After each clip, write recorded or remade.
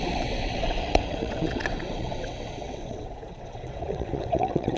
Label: remade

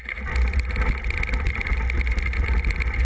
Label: recorded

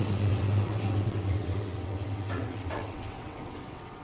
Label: remade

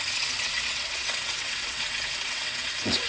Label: remade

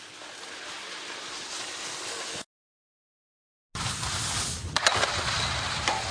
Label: recorded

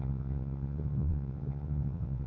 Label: remade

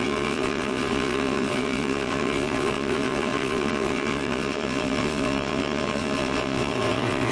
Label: remade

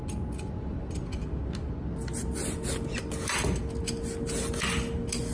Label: recorded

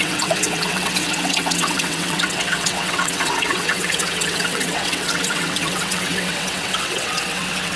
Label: remade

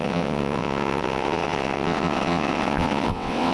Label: remade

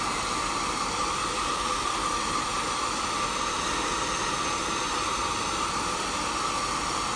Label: recorded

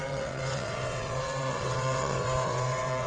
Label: remade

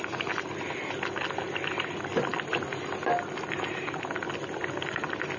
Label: recorded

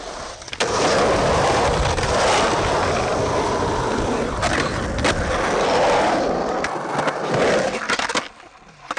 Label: recorded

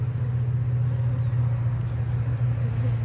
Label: recorded